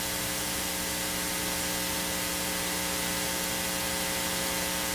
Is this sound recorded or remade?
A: recorded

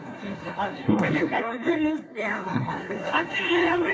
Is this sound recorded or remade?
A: remade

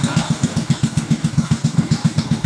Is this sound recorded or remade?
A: remade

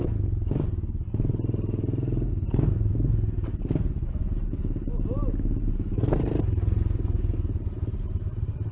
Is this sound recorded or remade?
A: recorded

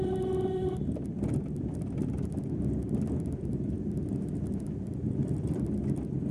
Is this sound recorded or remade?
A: remade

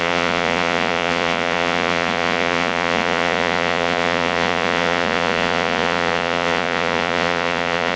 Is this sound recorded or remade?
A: remade